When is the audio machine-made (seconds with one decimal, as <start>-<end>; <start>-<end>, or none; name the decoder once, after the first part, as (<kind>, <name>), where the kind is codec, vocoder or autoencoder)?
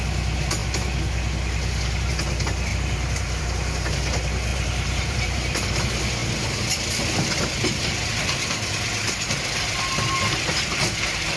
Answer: 2.7-3.4 (vocoder, BigVGAN v2); 4.5-5.8